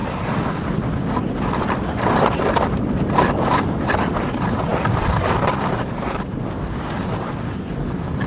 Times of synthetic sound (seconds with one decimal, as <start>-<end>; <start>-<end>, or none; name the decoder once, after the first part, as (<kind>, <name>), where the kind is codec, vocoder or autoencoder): none